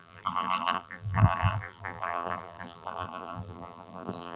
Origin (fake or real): fake